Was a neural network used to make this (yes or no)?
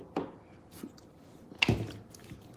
no